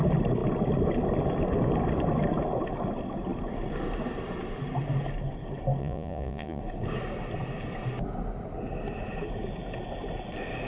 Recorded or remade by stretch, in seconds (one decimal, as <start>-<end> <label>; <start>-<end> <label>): 0.0-5.8 recorded; 5.8-6.6 remade; 6.6-10.7 recorded